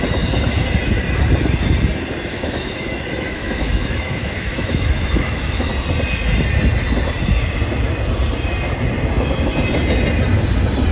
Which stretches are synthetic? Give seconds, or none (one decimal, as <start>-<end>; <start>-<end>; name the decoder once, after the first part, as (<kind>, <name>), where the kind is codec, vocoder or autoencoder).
2.3-5.7 (autoencoder, DAC-VAE)